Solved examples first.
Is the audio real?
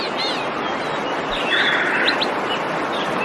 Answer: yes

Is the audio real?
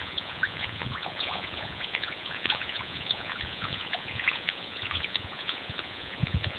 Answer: no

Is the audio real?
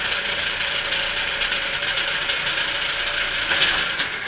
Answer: yes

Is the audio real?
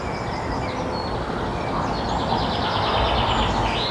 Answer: yes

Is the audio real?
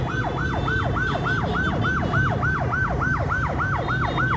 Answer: yes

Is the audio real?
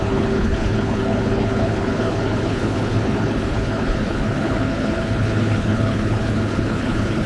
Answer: no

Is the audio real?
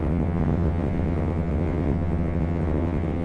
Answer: no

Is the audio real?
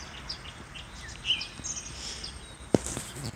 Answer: yes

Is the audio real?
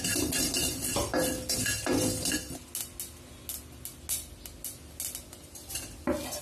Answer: yes